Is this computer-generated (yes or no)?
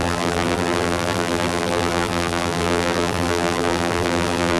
yes